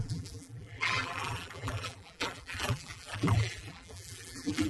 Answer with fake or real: fake